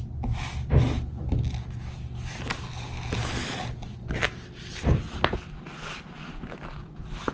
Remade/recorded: recorded